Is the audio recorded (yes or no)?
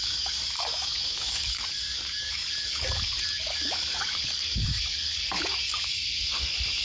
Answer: no